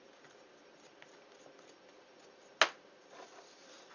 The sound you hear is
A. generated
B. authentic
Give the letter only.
B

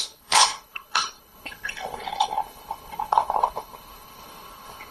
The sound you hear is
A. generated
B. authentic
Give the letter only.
A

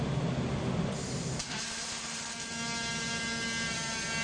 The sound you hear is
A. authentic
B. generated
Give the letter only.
A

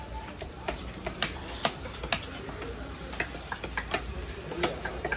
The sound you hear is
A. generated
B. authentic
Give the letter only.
A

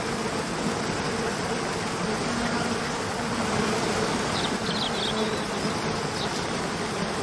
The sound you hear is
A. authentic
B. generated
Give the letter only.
A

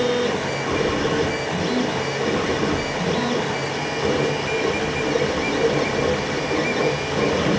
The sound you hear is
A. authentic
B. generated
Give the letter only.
A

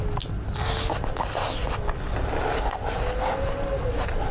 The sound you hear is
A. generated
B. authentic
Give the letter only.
B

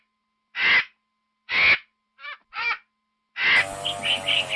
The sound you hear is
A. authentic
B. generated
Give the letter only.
A